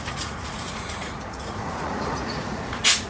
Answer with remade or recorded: remade